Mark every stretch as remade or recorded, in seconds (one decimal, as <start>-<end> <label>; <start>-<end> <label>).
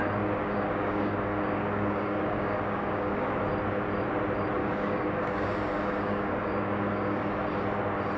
0.0-0.4 recorded; 0.4-3.4 remade; 3.4-4.6 recorded; 4.6-7.3 remade; 7.3-8.2 recorded